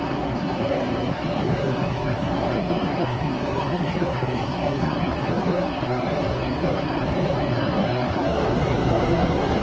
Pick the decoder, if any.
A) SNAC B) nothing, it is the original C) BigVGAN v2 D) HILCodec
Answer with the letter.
A